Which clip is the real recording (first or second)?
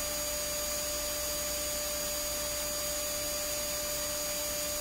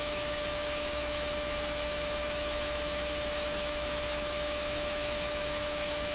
first